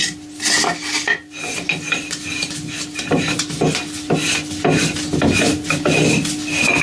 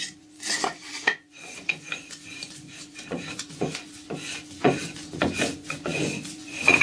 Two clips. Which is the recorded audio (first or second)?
first